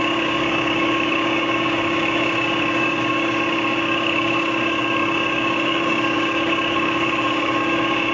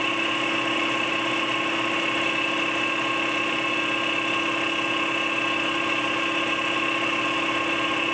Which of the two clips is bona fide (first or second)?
second